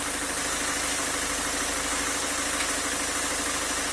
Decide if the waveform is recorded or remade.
recorded